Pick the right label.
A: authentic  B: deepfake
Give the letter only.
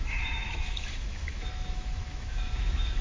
B